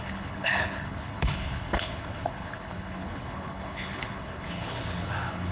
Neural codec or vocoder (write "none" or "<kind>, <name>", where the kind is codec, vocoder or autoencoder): codec, HILCodec